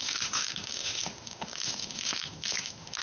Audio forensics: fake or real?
fake